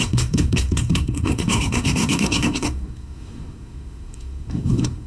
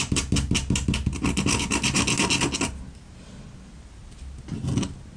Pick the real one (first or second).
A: second